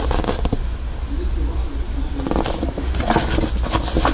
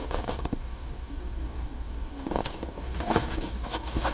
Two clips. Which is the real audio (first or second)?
first